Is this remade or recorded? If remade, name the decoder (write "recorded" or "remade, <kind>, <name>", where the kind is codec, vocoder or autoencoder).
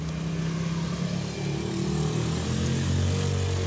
recorded